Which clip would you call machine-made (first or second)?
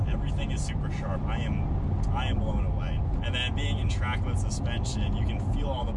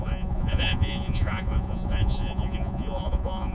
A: second